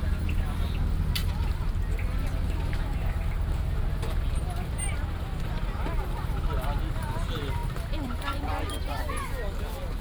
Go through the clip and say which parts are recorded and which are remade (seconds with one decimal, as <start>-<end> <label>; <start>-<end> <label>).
0.0-7.6 recorded; 7.6-9.3 remade; 9.3-10.0 recorded